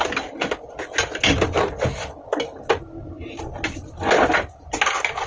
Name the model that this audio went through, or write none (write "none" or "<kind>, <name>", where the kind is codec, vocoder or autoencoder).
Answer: none